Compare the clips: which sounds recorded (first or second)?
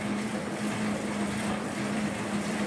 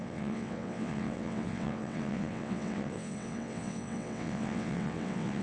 first